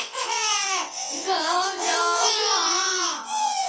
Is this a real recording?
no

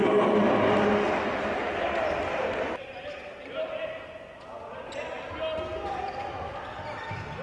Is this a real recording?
yes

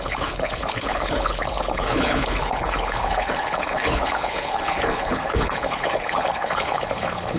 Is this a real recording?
no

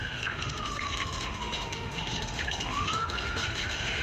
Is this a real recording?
no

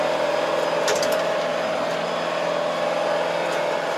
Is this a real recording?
yes